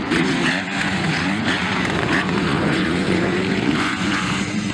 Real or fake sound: fake